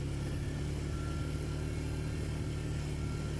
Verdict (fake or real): real